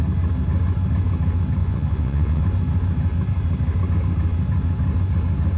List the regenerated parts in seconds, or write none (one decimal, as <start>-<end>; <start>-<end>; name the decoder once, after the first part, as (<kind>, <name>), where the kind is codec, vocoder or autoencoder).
1.6-2.4 (vocoder, Vocos)